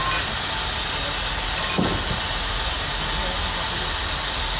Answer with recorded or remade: recorded